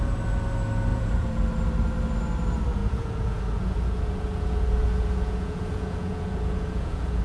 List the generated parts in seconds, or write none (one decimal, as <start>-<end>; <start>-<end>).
0.9-1.4; 2.8-7.2